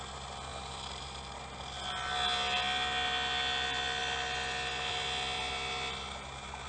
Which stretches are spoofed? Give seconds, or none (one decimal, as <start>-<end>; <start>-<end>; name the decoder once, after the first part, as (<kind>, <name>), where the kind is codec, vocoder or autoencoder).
0.5-1.3 (vocoder, BigVGAN v2); 4.0-5.4